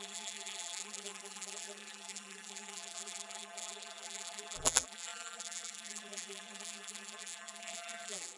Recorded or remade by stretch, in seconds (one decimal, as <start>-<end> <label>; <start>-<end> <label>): 0.0-8.4 remade